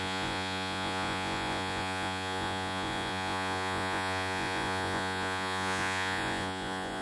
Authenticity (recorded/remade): remade